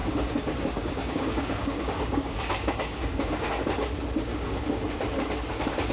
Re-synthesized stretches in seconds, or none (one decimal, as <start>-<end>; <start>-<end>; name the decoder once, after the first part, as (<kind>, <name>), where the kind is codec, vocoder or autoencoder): 0.0-3.5 (codec, DAC); 4.3-4.9